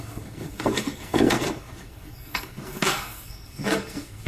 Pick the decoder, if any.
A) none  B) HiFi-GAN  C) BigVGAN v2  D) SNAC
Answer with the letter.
D